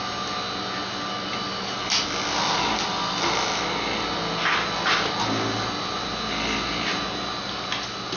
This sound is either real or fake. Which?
real